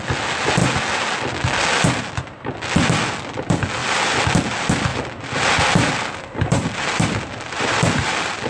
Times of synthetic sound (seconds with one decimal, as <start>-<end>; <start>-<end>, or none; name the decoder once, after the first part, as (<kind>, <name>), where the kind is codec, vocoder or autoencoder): 4.9-5.7 (vocoder, BigVGAN v2); 6.6-8.1